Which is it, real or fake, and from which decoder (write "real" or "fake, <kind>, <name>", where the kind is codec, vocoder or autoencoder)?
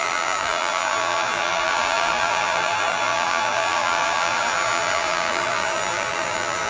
fake, vocoder, BigVGAN v2